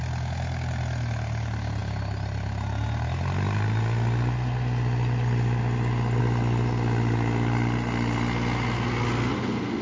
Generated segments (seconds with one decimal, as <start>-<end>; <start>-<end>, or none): none